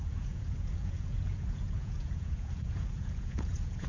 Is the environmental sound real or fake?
fake